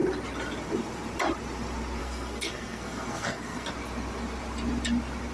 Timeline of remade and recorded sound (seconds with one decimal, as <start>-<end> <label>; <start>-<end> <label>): 0.0-2.0 recorded; 2.0-3.7 remade; 3.7-5.3 recorded